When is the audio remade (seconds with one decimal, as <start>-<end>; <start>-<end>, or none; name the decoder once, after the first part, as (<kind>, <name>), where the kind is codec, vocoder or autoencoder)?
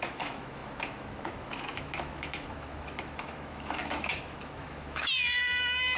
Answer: 0.0-6.0 (autoencoder, DAC-VAE)